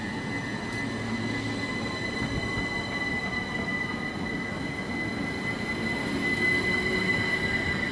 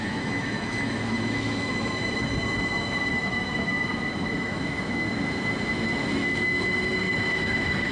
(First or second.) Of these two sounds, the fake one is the second